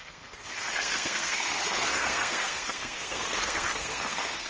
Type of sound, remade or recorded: remade